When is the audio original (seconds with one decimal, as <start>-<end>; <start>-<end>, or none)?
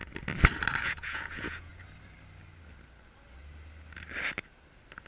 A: 0.0-0.8; 1.7-5.1